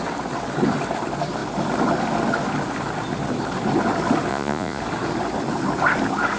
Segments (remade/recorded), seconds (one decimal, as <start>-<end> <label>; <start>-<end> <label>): 0.0-4.3 recorded; 4.3-4.8 remade; 4.8-6.4 recorded